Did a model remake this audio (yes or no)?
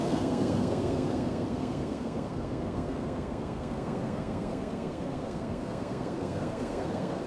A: yes